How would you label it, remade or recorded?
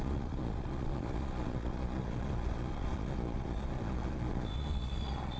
remade